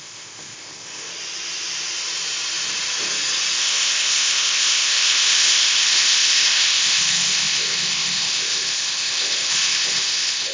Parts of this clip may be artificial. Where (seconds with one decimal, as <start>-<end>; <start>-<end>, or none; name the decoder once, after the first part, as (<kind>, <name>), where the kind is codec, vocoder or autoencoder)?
0.0-1.1 (codec, ZipCodec); 3.6-10.5